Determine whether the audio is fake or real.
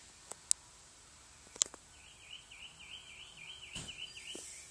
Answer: real